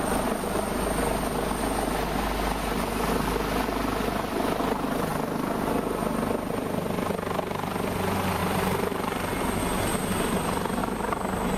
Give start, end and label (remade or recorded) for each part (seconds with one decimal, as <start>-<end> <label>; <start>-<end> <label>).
0.0-8.4 recorded; 8.4-9.6 remade; 9.6-10.8 recorded; 10.8-11.6 remade